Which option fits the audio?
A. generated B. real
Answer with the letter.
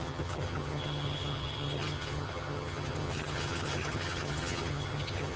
A